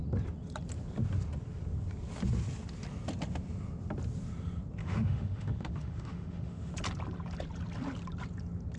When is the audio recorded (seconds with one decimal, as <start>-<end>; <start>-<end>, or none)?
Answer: 0.0-4.8; 6.7-8.8